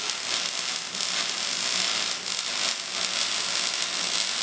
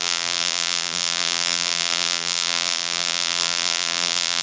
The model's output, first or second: second